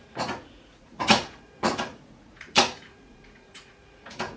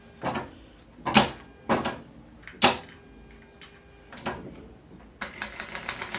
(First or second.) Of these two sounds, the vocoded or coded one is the first